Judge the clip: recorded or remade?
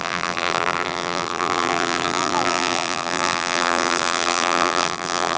remade